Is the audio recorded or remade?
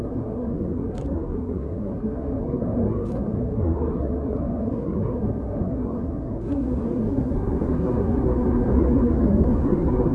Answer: remade